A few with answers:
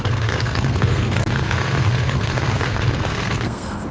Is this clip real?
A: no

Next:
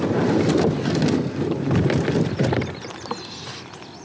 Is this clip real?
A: yes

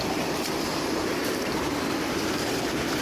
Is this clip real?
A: yes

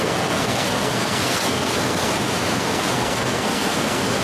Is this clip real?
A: no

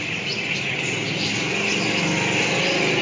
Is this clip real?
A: yes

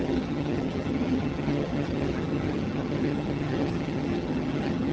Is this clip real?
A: no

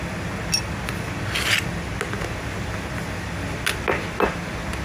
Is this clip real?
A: yes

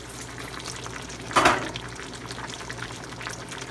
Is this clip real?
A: yes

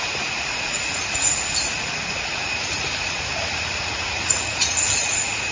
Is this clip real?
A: no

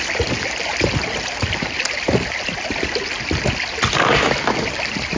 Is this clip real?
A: yes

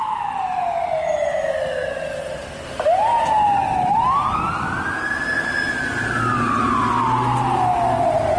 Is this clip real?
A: yes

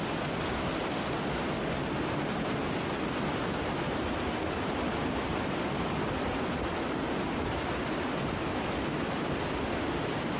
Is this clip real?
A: yes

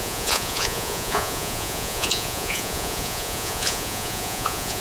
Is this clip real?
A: no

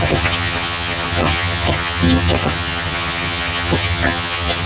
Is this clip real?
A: no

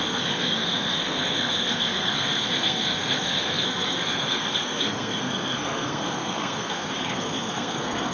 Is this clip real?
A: no